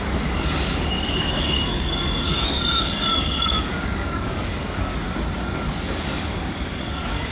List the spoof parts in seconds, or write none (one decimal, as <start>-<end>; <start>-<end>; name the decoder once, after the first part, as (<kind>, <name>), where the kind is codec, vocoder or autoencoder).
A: 0.0-4.9 (codec, DAC); 5.4-7.3